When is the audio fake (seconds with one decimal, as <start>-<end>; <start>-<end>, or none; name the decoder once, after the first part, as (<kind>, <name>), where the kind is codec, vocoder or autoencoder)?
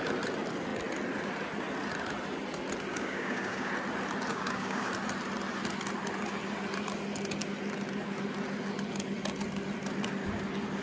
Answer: 2.9-3.7 (codec, DAC); 4.3-4.9